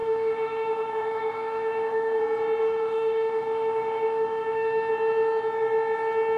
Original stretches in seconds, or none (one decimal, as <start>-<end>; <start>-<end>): 2.2-2.6; 4.9-6.4